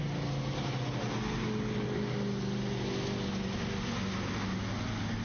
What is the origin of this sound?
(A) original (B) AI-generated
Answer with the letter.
A